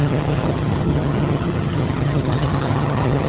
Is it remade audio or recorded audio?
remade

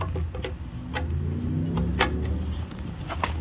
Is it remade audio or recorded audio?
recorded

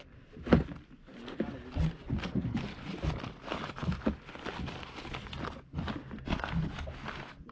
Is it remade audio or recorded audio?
recorded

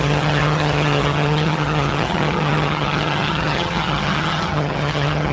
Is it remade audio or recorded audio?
remade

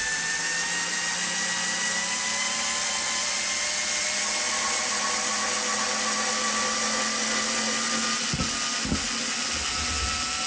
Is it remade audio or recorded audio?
recorded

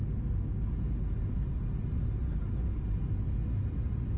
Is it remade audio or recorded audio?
recorded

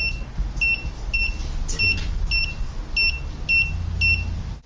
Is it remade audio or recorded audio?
recorded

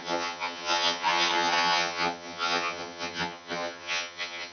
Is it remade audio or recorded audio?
remade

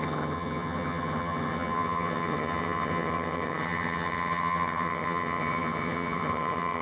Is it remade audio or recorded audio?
remade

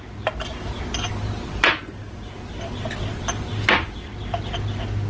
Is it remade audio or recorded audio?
recorded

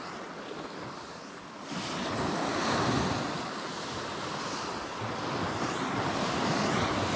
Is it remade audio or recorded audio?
recorded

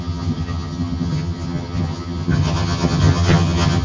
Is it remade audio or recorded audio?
remade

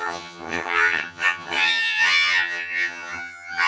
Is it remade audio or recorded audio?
remade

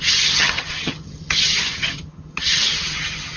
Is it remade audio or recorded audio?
remade